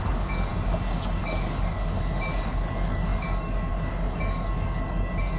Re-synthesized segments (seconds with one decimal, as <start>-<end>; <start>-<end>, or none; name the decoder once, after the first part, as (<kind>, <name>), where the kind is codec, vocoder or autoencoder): 0.0-0.5 (codec, DAC); 1.2-5.4

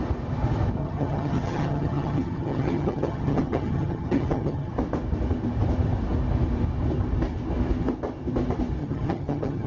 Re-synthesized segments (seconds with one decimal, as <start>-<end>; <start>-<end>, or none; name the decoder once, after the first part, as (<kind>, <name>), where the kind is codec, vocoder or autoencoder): 0.8-4.7 (vocoder, HiFi-GAN); 8.8-9.7

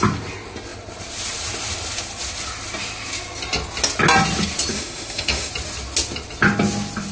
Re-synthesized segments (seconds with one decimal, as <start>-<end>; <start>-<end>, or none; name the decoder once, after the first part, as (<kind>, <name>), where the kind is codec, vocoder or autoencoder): 4.7-5.5 (autoencoder, DAC-VAE)

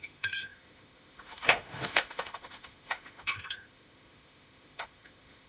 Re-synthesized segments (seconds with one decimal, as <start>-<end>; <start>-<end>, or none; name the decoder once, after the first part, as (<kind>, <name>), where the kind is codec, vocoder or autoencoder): 0.0-5.5 (autoencoder, DAC-VAE)

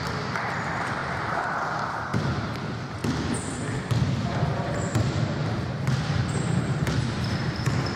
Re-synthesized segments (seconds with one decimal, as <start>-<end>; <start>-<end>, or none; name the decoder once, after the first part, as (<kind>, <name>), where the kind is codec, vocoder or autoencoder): 2.1-2.6 (vocoder, BigVGAN v2); 5.4-6.9

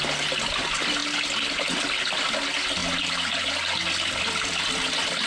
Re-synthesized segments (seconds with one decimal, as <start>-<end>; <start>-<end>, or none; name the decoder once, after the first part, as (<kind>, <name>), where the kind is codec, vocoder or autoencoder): none